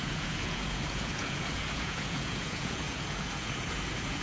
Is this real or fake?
fake